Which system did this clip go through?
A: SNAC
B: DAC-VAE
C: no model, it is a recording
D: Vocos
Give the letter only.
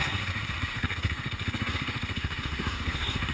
A